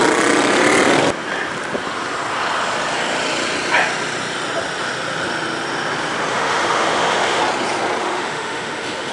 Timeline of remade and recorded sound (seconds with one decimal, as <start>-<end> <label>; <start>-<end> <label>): 0.0-6.3 recorded; 6.3-7.4 remade; 7.4-8.0 recorded; 8.0-9.1 remade